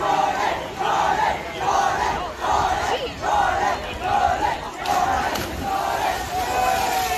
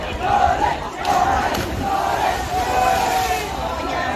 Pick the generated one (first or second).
second